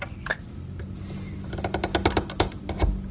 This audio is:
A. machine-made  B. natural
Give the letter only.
B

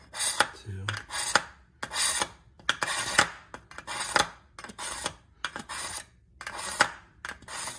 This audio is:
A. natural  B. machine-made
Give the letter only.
A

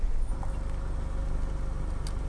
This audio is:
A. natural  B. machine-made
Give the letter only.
A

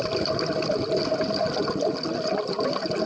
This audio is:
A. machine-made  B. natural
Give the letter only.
B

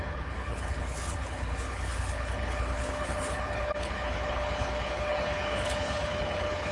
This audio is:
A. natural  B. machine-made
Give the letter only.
B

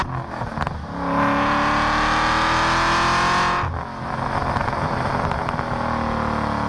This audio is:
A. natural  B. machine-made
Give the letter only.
A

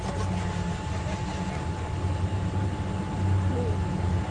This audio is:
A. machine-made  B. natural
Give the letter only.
B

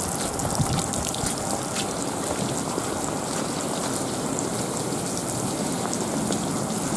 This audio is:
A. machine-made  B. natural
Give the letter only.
B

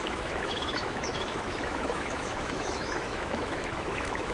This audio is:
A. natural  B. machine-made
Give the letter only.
B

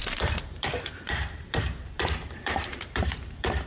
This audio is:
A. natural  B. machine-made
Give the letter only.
B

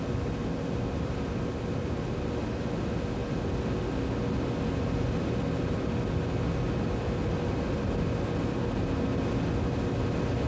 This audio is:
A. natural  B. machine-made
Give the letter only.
A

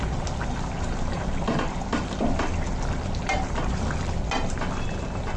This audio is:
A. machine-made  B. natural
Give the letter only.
B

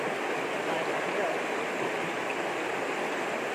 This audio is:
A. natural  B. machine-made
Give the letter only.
A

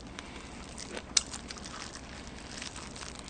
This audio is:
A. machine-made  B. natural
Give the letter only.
B